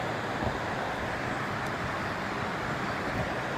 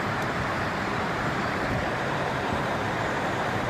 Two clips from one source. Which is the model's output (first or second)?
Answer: second